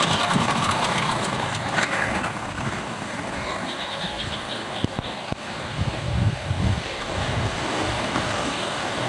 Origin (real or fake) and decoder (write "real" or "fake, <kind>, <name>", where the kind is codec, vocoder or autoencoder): fake, codec, DAC